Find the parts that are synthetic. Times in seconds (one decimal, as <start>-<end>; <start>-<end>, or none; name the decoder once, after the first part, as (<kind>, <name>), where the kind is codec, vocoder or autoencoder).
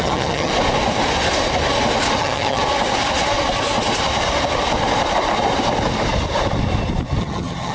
0.0-0.5 (vocoder, HiFi-GAN); 2.2-2.6; 7.2-7.7